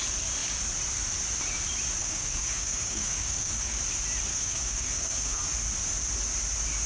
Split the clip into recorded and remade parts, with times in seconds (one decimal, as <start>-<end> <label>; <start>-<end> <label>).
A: 0.0-2.0 recorded; 2.0-3.8 remade; 3.8-4.3 recorded; 4.3-5.4 remade; 5.4-6.9 recorded